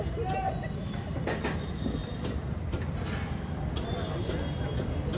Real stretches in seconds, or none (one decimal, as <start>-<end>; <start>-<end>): 0.0-2.0